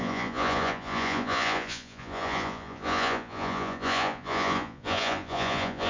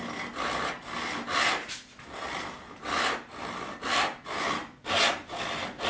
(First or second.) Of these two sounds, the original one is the second